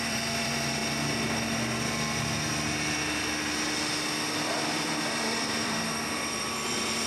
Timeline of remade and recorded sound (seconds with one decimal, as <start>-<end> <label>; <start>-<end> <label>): 0.0-0.8 remade; 0.8-4.4 recorded; 4.4-7.1 remade